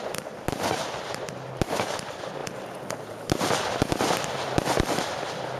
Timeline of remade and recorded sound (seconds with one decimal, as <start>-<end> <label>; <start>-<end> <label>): 0.0-2.4 remade; 2.4-4.8 recorded; 4.8-5.6 remade